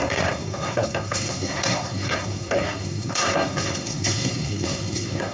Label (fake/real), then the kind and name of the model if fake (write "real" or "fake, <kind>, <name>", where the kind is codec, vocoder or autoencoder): fake, codec, SNAC